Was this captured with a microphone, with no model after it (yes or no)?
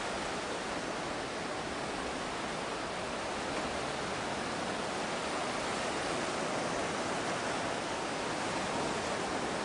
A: yes